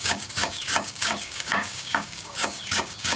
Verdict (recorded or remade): remade